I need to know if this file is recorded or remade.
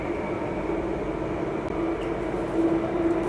recorded